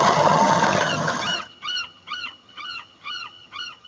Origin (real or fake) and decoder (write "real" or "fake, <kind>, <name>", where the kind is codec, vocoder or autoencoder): fake, vocoder, HiFi-GAN